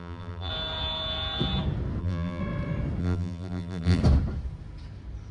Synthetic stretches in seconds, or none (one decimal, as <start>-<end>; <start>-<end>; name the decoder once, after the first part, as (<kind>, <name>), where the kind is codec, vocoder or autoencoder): 0.0-0.5 (vocoder, BigVGAN v2); 2.0-2.4; 3.0-4.0